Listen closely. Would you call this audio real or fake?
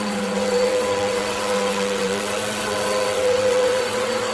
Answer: fake